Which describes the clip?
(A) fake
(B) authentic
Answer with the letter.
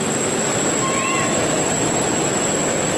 B